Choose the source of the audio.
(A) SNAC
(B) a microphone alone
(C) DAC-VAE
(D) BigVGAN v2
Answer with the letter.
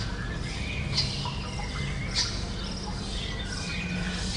B